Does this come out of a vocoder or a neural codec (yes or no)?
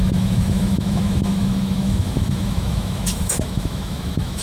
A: yes